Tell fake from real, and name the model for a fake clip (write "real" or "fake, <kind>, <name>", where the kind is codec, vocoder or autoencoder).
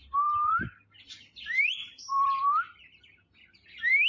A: fake, vocoder, BigVGAN v2